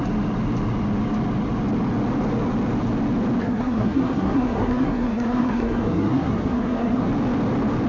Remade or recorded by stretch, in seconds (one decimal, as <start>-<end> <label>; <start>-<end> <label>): 0.0-3.4 recorded; 3.4-7.1 remade; 7.1-7.9 recorded